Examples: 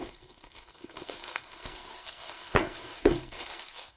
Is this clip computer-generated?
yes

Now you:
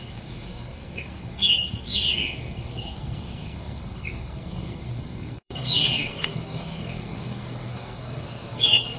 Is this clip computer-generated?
yes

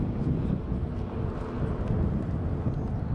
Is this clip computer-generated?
no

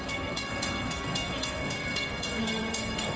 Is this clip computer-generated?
yes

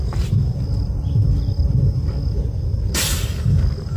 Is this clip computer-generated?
no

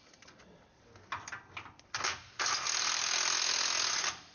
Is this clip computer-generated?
no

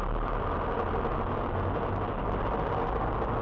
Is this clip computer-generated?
no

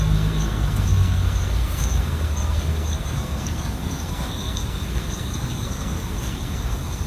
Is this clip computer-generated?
yes